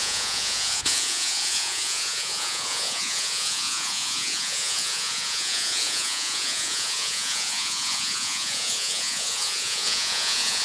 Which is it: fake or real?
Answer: fake